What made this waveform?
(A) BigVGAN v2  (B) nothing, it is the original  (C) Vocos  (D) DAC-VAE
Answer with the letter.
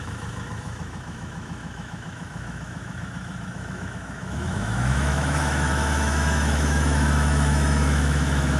D